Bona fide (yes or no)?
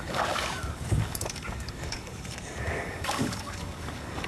no